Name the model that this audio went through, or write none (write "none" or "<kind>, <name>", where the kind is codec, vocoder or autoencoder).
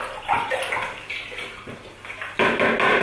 none